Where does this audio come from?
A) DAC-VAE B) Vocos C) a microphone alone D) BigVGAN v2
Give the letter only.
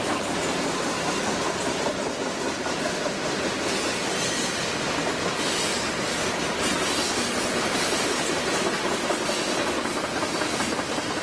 C